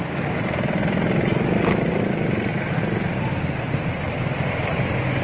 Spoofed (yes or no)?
no